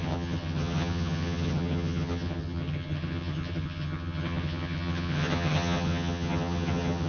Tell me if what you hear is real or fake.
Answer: fake